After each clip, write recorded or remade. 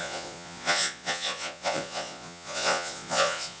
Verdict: remade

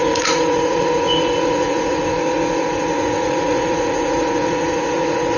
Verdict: remade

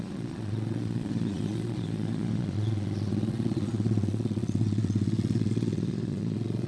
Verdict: remade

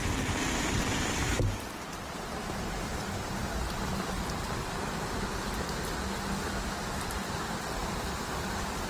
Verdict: recorded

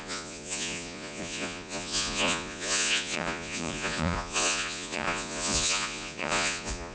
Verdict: remade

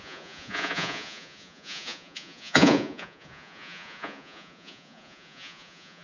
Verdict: remade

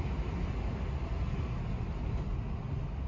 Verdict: recorded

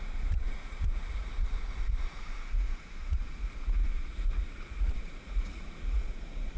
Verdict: remade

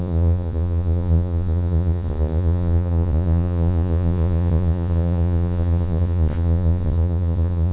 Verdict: remade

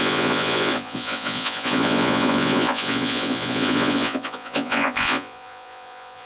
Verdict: remade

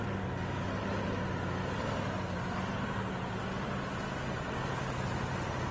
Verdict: recorded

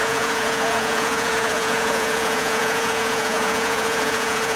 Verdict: remade